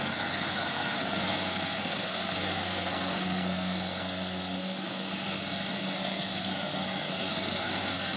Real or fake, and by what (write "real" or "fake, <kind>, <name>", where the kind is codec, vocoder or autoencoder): fake, codec, SNAC